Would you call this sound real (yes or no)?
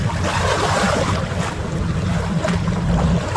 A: yes